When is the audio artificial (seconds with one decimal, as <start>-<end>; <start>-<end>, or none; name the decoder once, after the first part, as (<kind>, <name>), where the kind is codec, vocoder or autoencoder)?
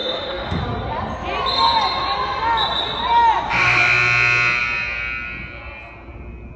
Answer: 0.0-0.6 (autoencoder, DAC-VAE)